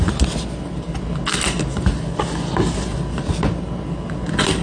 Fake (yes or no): no